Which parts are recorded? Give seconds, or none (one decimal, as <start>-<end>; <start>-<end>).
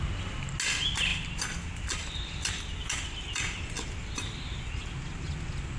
0.0-5.8